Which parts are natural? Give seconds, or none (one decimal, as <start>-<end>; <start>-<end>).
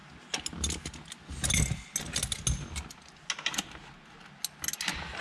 0.0-5.2